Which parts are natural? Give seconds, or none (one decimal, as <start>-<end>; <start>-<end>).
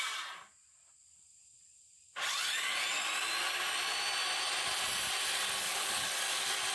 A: 0.0-5.6; 6.2-6.7